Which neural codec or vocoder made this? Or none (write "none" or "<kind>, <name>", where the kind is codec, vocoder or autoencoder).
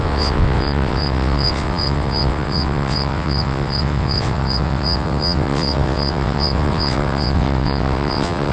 vocoder, WaveNeXt